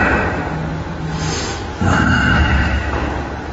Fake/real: real